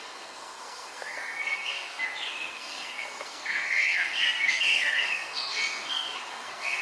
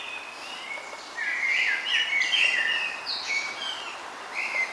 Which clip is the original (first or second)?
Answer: second